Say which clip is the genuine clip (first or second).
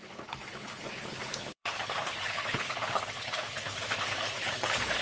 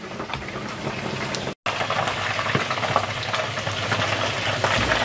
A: second